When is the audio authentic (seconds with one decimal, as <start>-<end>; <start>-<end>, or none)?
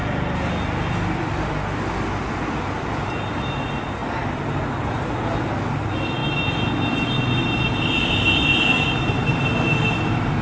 0.0-10.4